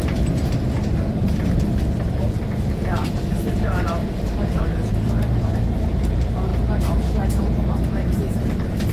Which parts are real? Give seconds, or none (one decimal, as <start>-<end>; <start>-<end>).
6.5-7.9